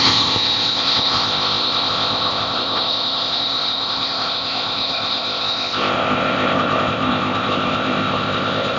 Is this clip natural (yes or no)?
no